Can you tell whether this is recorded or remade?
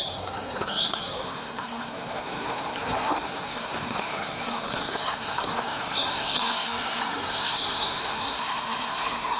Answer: remade